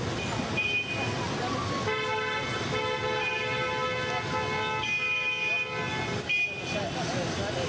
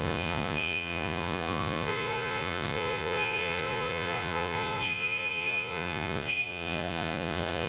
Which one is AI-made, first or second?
second